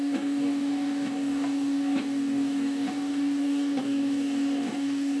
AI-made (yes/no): yes